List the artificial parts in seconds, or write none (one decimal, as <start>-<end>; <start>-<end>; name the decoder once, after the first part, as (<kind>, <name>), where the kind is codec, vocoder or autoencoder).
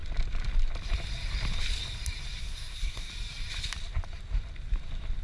2.4-3.1 (codec, SNAC)